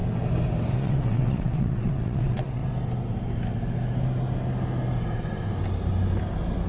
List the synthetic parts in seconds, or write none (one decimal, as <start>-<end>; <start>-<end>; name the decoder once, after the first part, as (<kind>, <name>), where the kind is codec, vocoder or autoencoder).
0.7-2.6 (vocoder, WaveNeXt)

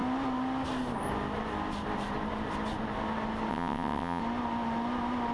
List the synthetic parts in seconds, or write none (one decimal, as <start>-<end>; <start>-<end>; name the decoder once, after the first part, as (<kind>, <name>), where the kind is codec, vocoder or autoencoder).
3.5-4.2 (vocoder, WaveNeXt)